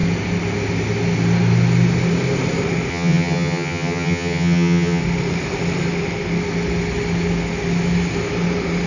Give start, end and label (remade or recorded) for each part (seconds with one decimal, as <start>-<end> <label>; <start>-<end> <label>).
0.0-2.9 recorded; 2.9-5.0 remade; 5.0-8.9 recorded